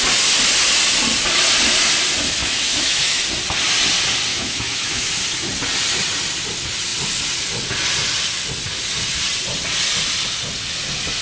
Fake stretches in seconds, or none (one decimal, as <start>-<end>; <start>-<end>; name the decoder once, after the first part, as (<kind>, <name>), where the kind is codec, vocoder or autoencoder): 2.4-3.2 (autoencoder, DAC-VAE); 4.3-5.1